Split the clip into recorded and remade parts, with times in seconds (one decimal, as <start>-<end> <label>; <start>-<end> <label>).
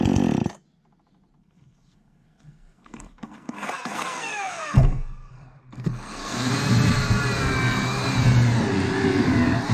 0.0-1.4 recorded; 1.4-6.5 remade; 6.5-9.7 recorded